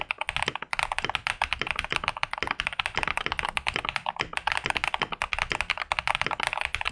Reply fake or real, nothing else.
real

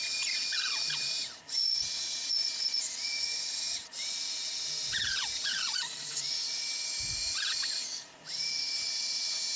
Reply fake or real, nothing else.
fake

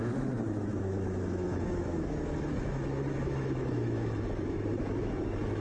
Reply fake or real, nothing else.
fake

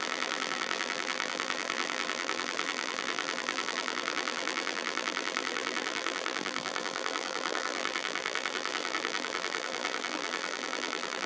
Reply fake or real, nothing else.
fake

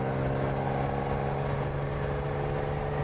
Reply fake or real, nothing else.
real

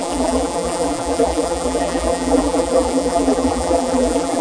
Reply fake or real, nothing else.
fake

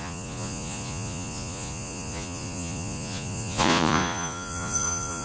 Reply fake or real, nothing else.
fake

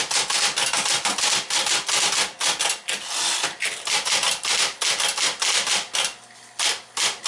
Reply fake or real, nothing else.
real